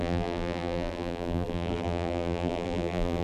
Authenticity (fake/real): fake